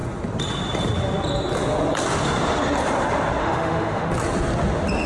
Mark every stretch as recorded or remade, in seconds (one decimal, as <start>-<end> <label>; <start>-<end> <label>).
0.0-3.4 recorded; 3.4-4.1 remade; 4.1-5.1 recorded